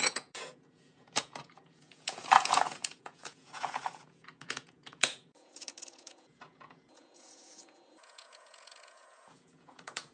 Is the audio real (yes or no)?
no